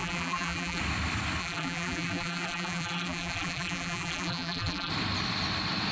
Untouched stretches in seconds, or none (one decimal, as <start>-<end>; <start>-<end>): 0.8-1.4; 4.9-5.9